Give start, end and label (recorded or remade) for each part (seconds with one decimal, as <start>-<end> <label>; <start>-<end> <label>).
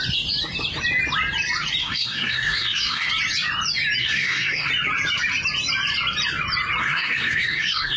0.0-1.8 recorded; 1.8-3.1 remade; 3.1-4.0 recorded; 4.0-4.7 remade; 4.7-6.8 recorded; 6.8-8.0 remade